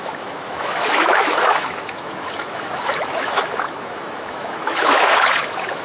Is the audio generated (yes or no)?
yes